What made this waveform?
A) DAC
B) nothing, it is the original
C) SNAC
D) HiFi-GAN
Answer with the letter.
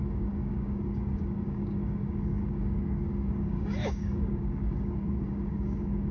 A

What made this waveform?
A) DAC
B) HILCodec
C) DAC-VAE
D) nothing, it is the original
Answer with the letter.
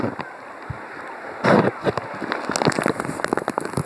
D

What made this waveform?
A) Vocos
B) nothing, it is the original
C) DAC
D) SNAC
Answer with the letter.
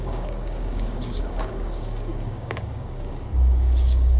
C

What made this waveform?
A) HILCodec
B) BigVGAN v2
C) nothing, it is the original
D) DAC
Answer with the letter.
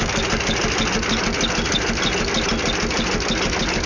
C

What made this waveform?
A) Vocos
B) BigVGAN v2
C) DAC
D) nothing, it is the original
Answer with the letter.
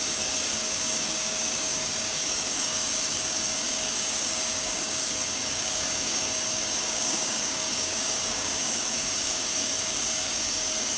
C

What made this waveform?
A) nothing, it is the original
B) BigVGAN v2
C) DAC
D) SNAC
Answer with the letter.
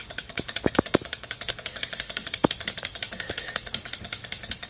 C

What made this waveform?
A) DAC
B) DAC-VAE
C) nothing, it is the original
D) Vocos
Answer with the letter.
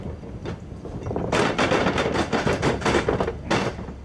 C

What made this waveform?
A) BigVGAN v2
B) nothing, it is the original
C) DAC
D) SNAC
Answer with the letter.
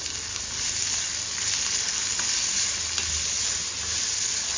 B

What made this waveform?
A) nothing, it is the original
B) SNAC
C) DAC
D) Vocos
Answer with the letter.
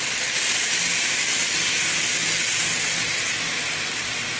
A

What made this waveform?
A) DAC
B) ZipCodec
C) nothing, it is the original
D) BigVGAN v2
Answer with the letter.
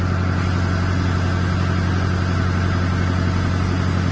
C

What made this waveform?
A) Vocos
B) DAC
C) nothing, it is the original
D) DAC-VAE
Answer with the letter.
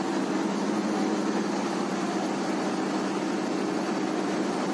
C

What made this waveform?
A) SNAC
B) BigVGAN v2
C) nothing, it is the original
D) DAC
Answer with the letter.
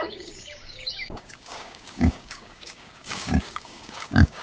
D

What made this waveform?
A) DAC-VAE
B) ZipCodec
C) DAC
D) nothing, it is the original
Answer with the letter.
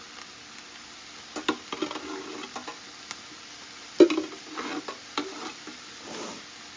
D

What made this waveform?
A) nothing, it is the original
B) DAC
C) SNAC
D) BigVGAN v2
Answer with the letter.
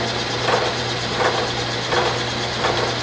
A